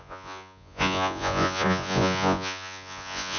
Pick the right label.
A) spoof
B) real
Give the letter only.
A